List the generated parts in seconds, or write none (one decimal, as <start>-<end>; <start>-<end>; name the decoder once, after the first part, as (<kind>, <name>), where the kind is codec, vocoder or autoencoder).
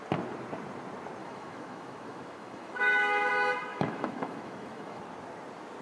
1.2-3.3 (autoencoder, DAC-VAE); 3.7-5.0